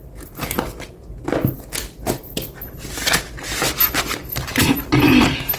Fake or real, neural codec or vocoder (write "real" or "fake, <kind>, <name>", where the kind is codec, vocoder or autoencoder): real